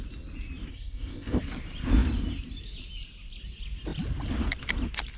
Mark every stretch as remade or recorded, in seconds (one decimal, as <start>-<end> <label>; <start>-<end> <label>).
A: 0.0-0.7 recorded; 0.7-1.4 remade; 1.4-5.2 recorded